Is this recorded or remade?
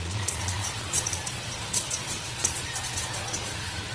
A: remade